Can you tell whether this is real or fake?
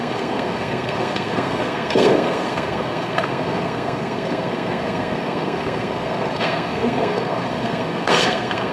fake